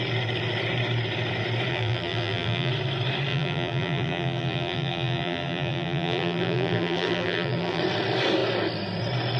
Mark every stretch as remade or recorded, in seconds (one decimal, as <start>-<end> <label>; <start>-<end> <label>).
0.0-1.7 recorded; 1.7-2.7 remade; 2.7-3.3 recorded; 3.3-7.8 remade; 7.8-9.4 recorded